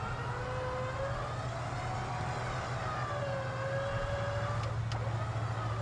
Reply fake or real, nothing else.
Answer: real